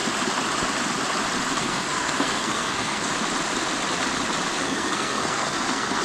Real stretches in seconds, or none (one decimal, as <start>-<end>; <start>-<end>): 0.0-1.5; 3.1-4.6